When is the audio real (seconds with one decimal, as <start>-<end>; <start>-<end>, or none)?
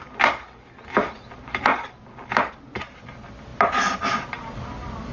0.0-5.1